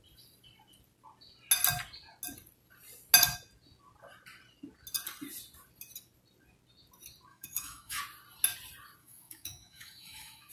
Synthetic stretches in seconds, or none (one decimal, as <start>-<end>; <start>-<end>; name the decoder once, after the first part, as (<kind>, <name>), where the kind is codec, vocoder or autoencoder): 7.3-8.0 (autoencoder, DAC-VAE); 9.0-10.5